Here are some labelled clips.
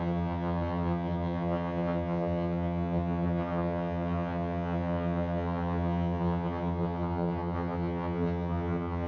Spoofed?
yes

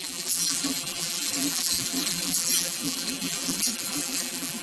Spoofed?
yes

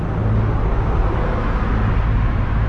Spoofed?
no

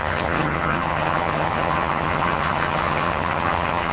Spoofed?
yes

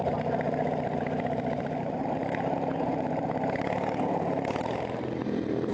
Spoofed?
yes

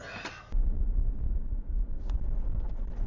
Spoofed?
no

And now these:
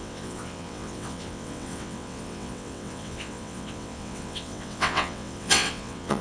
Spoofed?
yes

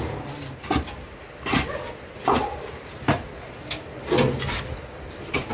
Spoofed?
no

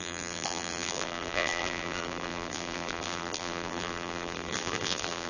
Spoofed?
yes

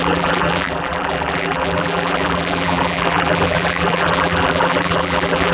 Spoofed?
yes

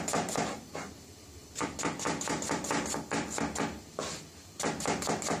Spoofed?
no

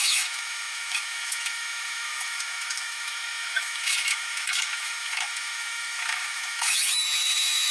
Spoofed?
yes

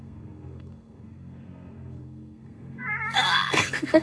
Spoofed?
yes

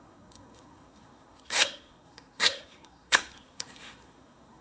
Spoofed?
yes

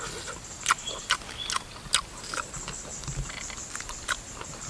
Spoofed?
no